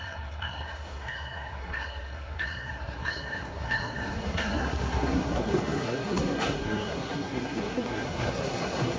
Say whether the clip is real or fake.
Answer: fake